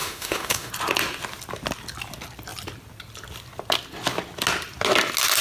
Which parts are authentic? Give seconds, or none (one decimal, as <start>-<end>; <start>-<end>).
0.7-5.4